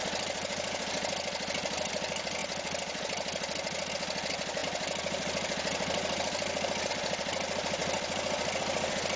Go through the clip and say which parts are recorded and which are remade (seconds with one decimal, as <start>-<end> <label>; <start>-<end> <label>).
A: 0.0-9.2 recorded